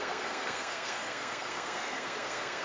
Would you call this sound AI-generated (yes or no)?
yes